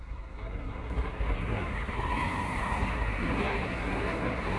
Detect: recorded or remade remade